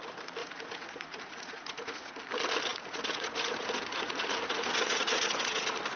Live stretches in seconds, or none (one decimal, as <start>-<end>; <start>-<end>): 0.0-0.4; 2.2-2.7; 5.6-6.0